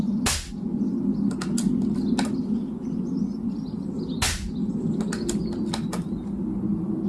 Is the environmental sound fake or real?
real